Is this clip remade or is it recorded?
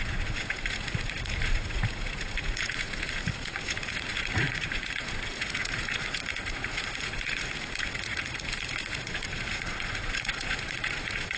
remade